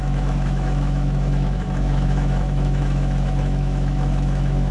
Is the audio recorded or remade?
remade